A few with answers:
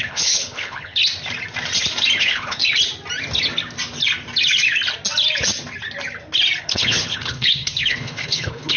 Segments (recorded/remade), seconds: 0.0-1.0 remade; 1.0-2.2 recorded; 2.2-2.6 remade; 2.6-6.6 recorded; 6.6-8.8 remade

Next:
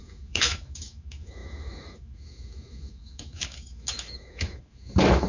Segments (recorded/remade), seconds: 0.0-5.3 remade

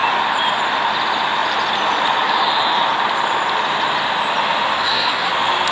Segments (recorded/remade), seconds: 0.0-4.8 recorded; 4.8-5.3 remade; 5.3-5.7 recorded

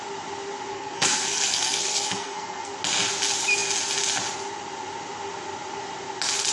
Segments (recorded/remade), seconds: 0.0-0.7 recorded; 0.7-2.7 remade; 2.7-6.5 recorded

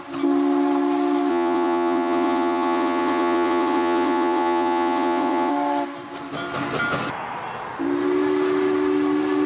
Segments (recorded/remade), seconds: 0.0-1.3 recorded; 1.3-5.5 remade; 5.5-9.5 recorded

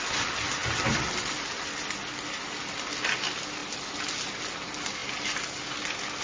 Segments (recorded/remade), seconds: 0.0-6.2 recorded

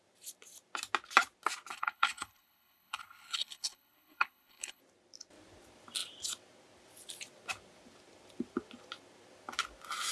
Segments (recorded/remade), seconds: 0.0-1.7 recorded; 1.7-4.8 remade; 4.8-10.1 recorded